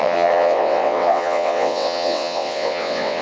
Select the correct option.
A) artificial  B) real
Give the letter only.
A